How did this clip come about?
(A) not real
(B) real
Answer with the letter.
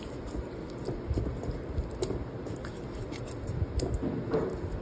B